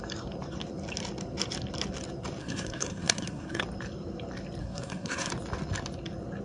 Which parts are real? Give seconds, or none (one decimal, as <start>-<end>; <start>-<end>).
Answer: 0.0-2.4; 3.6-4.6; 5.3-6.4